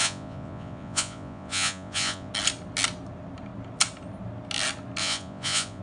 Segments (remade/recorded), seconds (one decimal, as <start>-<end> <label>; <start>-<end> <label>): 0.0-2.3 remade; 2.3-5.0 recorded; 5.0-5.8 remade